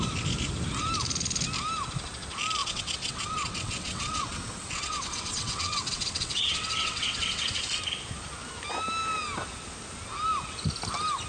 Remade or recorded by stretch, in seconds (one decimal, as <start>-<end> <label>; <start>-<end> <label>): 0.0-2.6 recorded; 2.6-7.6 remade; 7.6-11.3 recorded